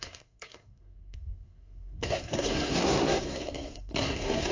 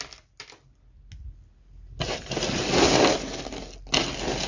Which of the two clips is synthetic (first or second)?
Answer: first